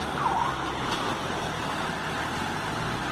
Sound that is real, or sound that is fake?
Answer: real